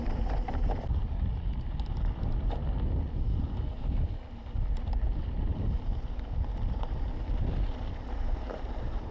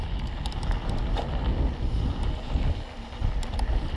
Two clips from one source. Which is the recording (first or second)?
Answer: second